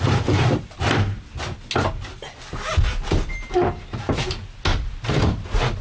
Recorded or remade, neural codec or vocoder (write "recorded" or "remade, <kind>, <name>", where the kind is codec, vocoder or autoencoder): recorded